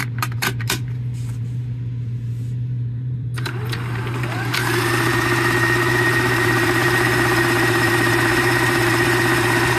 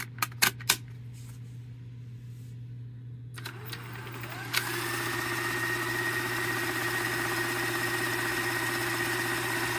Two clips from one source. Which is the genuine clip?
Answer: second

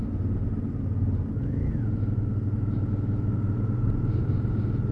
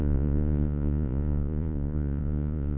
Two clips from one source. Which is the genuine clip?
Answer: first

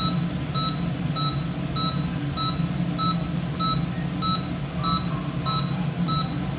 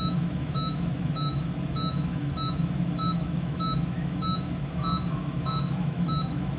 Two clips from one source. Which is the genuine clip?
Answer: first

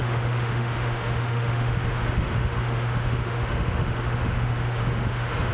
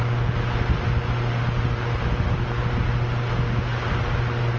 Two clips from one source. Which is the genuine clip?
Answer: second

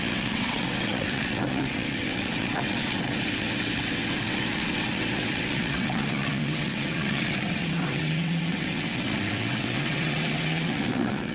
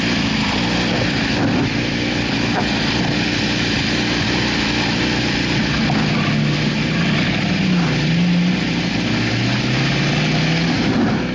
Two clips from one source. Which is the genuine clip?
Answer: second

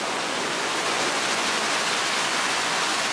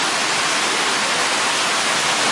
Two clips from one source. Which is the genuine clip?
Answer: second